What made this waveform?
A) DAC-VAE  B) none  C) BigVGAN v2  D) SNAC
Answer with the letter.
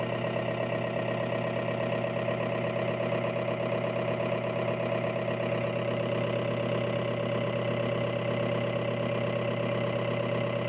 B